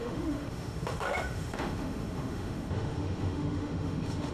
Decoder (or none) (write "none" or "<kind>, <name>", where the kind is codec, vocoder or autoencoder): autoencoder, DAC-VAE